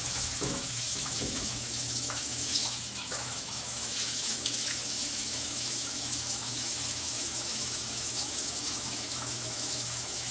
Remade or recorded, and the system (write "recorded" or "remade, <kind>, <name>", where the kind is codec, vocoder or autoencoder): remade, autoencoder, DAC-VAE